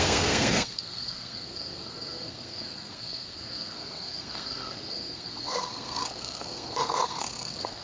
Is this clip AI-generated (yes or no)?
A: yes